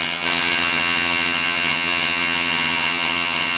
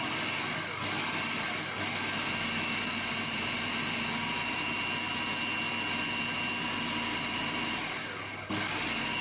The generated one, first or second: first